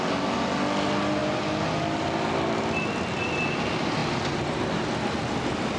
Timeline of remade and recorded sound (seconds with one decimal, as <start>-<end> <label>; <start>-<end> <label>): 0.0-5.8 recorded